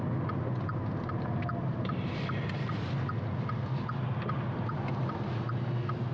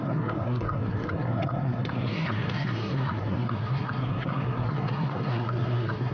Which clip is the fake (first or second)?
second